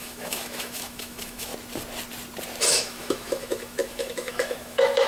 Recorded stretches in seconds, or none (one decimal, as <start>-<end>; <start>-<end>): 1.5-2.7